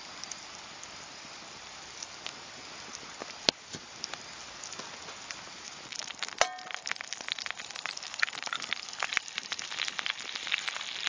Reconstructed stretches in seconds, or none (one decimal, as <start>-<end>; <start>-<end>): none